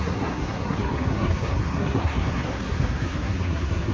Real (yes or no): no